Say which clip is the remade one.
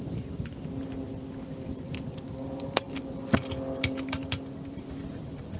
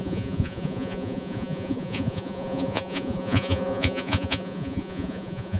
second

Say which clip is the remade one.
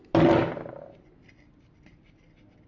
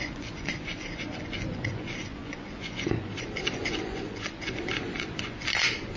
second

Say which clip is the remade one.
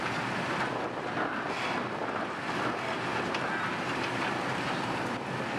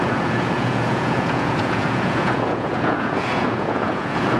second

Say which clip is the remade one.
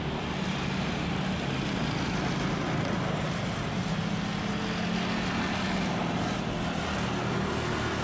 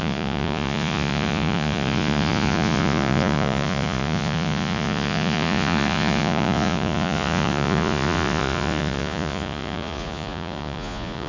second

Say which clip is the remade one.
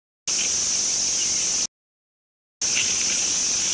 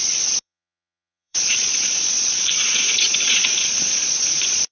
second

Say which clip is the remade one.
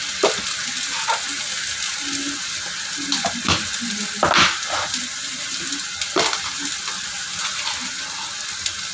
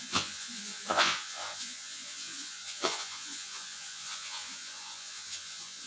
second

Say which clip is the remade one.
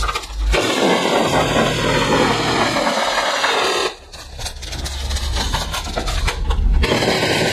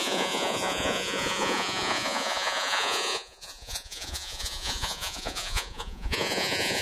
second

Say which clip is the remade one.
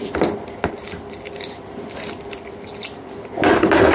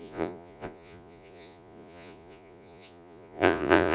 second